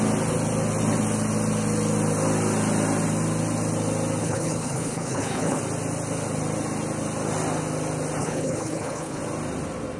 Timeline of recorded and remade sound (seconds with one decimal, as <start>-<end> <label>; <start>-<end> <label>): 0.0-4.2 recorded; 4.2-5.6 remade; 5.6-8.2 recorded; 8.2-9.2 remade; 9.2-10.0 recorded